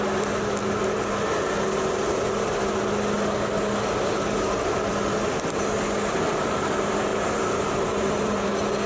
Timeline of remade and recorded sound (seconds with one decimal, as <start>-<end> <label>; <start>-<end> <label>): 0.0-7.1 recorded; 7.1-8.5 remade; 8.5-8.9 recorded